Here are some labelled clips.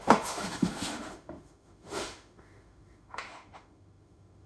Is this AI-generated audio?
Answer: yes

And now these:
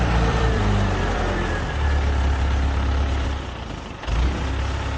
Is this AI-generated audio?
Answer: yes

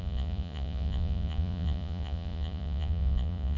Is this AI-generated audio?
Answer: yes